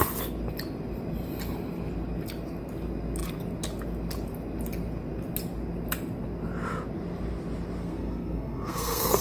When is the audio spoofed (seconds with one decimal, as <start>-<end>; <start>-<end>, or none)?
7.8-9.2

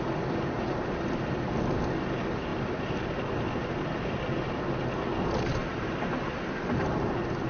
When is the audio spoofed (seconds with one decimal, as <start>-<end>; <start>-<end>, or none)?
none

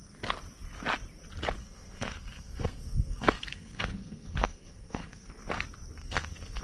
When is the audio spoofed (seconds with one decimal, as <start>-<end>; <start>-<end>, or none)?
1.6-5.3; 6.0-6.6